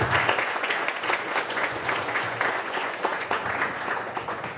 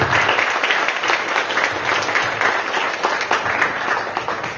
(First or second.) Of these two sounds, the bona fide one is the second